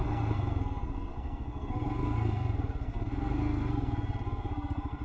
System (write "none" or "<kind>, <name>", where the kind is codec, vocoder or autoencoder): codec, SNAC